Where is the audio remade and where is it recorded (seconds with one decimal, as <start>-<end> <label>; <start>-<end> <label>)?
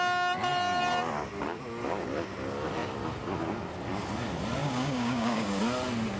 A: 0.0-4.6 recorded; 4.6-5.6 remade; 5.6-6.2 recorded